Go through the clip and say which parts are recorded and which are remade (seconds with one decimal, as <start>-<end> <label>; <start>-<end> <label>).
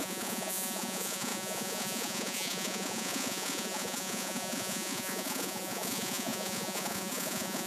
0.0-7.7 remade